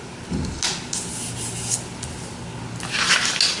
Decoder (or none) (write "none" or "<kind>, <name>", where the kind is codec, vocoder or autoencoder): none